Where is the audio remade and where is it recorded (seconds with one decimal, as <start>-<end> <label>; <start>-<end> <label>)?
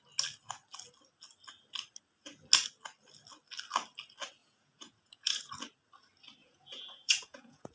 0.0-4.4 recorded; 4.4-5.5 remade; 5.5-6.4 recorded; 6.4-7.7 remade